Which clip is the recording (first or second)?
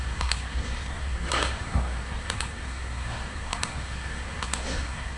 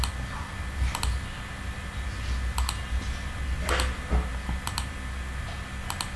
second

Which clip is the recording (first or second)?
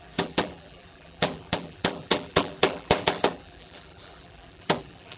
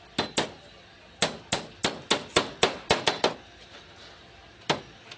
second